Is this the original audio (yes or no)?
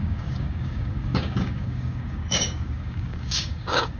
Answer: no